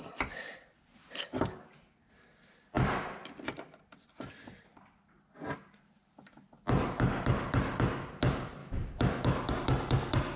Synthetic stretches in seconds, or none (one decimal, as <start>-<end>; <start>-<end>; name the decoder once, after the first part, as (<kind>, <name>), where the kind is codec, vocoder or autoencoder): 8.6-9.5 (autoencoder, DAC-VAE)